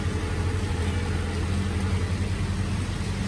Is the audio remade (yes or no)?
no